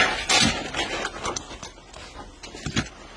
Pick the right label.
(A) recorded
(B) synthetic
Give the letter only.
A